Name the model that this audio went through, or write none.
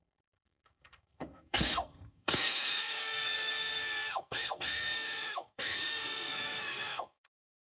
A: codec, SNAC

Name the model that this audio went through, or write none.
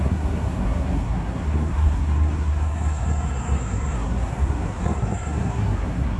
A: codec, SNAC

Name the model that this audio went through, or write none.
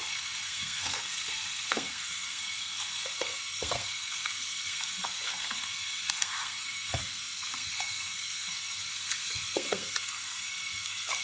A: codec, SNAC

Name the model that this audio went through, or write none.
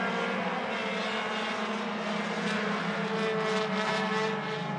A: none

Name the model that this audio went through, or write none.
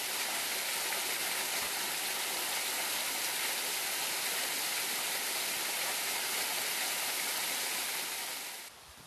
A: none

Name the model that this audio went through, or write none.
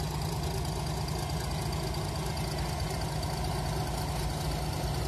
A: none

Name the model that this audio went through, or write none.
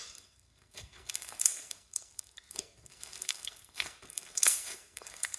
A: codec, SNAC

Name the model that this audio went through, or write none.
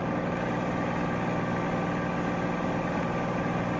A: none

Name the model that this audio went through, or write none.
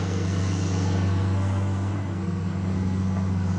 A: codec, SNAC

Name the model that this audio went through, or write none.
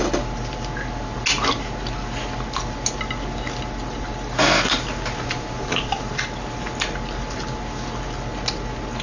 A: none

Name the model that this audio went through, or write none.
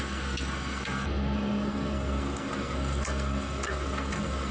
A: codec, SNAC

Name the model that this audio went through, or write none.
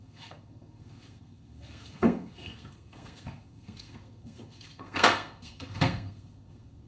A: codec, SNAC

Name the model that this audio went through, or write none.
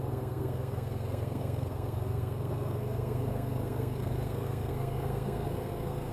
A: codec, SNAC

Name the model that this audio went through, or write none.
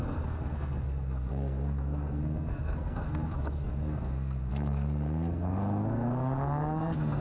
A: codec, SNAC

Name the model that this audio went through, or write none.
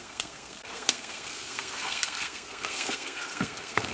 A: codec, SNAC